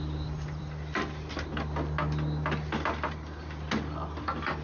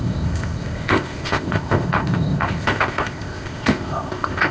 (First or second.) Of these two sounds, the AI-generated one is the second